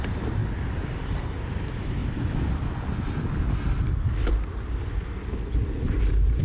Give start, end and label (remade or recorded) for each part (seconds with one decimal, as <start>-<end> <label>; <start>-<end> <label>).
0.0-0.4 remade; 0.4-1.3 recorded; 1.3-2.0 remade; 2.0-5.8 recorded; 5.8-6.4 remade